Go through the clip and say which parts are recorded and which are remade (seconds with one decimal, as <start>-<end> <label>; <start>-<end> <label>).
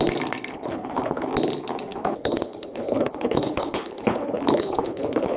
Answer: 0.0-0.5 recorded; 0.5-1.3 remade; 1.3-1.9 recorded; 1.9-5.4 remade